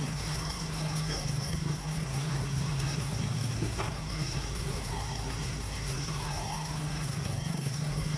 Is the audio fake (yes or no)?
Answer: yes